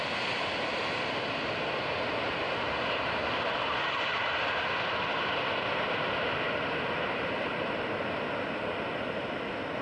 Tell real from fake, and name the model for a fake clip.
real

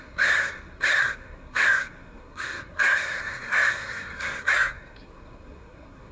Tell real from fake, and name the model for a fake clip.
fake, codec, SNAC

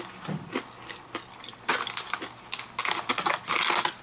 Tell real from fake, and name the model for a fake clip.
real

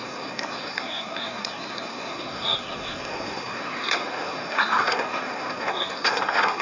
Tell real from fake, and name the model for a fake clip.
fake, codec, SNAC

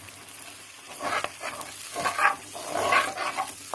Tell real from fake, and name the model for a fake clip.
real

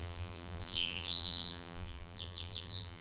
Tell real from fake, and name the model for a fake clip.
fake, vocoder, BigVGAN v2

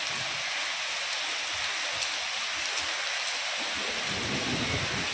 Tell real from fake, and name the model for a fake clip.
real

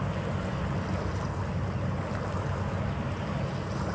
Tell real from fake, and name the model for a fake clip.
real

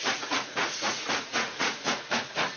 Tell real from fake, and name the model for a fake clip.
fake, vocoder, Vocos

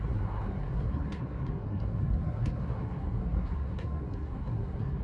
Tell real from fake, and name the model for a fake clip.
fake, codec, SNAC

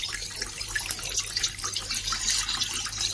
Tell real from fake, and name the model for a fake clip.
real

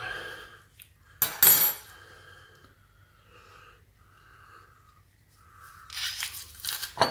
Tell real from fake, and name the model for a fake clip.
real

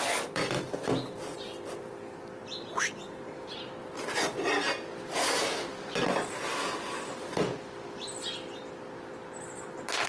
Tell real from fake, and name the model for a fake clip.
real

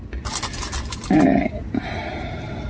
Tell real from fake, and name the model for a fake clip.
real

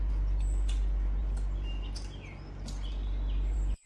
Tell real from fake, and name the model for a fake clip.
real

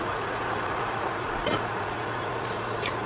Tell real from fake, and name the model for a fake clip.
fake, vocoder, Vocos